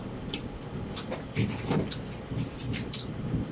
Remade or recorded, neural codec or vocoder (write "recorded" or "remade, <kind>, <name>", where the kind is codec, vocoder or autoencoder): recorded